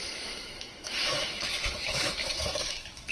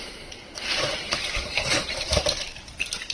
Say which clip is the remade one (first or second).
first